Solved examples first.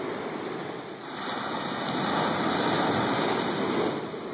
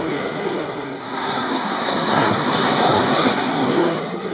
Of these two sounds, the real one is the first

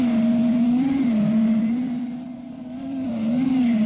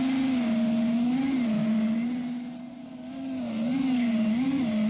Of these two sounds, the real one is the second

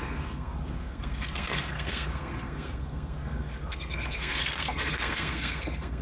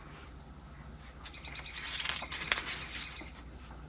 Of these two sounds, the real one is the second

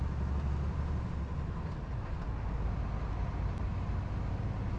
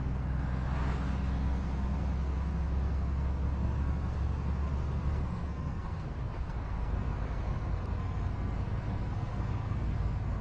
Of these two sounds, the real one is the first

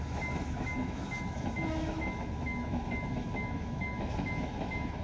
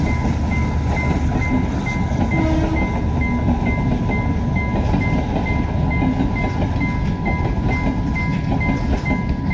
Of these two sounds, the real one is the second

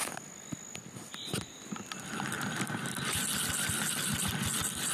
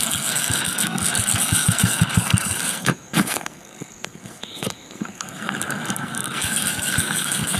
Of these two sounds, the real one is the first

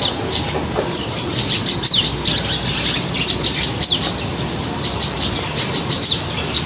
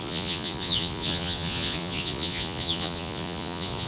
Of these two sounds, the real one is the first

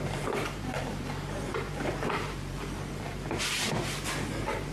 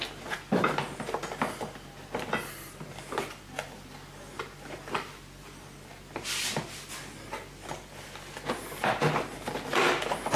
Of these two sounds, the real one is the second